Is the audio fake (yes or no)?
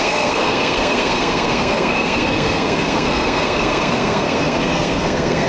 yes